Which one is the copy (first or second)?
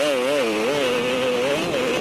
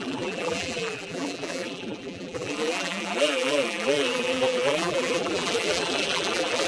second